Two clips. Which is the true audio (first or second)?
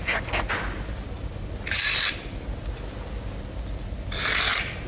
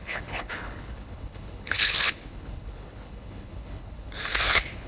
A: first